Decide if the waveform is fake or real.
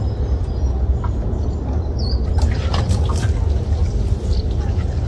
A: real